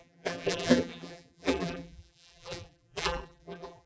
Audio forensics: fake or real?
fake